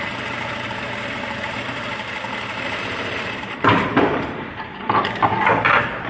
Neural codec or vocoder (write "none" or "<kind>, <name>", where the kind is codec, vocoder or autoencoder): vocoder, BigVGAN v2